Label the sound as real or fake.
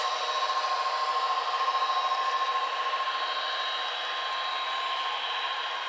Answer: real